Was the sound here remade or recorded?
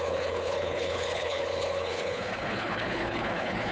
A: remade